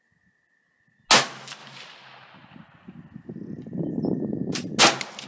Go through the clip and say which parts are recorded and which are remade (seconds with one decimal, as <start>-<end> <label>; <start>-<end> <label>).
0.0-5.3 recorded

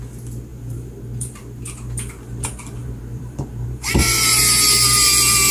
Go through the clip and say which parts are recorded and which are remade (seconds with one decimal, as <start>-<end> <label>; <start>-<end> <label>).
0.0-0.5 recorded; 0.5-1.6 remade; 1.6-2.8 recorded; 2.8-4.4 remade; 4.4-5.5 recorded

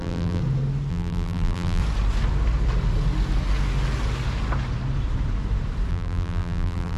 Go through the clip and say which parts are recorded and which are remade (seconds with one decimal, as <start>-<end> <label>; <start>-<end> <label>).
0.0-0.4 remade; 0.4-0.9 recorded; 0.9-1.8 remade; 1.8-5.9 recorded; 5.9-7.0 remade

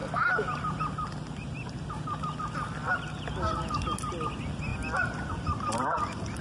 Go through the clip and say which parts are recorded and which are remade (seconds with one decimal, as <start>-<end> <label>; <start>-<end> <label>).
0.0-1.5 remade; 1.5-4.7 recorded; 4.7-6.4 remade